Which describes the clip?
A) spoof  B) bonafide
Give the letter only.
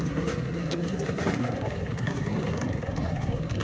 A